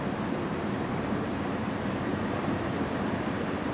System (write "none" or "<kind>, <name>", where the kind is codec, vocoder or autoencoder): vocoder, BigVGAN v2